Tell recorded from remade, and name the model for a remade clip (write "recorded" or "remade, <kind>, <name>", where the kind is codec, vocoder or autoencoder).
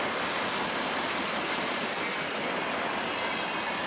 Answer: recorded